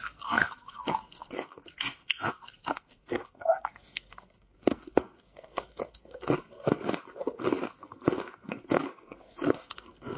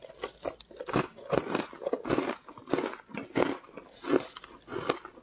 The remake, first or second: first